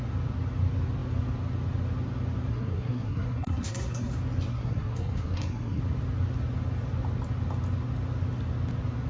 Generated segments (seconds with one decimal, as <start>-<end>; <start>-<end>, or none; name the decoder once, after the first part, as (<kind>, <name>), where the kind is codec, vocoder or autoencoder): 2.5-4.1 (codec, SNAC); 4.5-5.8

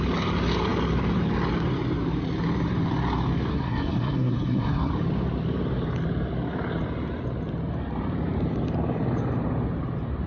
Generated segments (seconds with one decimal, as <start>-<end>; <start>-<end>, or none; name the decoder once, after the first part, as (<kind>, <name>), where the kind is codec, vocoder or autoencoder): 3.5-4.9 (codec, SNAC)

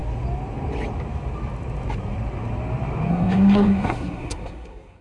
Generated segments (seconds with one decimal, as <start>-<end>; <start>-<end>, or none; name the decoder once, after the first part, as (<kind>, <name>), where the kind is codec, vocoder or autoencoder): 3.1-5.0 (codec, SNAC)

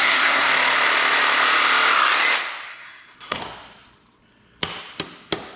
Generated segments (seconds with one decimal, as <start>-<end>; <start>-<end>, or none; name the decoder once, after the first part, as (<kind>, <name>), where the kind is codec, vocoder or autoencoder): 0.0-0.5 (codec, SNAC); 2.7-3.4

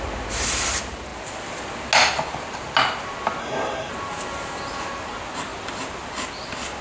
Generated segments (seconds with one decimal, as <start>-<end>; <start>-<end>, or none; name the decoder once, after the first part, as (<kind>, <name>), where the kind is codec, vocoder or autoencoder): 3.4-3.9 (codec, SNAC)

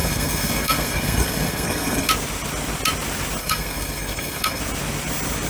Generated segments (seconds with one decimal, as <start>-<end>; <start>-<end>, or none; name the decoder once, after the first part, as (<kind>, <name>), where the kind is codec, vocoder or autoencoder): 0.0-2.1 (codec, SNAC); 3.4-4.6

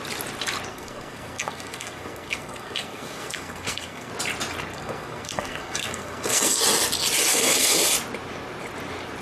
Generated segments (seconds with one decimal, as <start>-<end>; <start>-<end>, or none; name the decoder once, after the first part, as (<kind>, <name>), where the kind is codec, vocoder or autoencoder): 0.7-4.1 (codec, SNAC); 4.7-6.6; 7.3-7.9

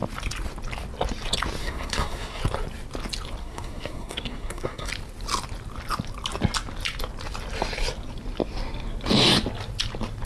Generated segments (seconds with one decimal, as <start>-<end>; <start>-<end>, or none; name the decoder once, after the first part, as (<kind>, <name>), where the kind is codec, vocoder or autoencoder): 1.6-2.4 (codec, SNAC); 3.4-4.9